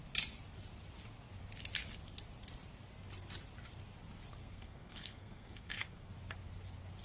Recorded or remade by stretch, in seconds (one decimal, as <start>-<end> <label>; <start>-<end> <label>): 0.0-4.4 recorded; 4.4-6.1 remade; 6.1-7.0 recorded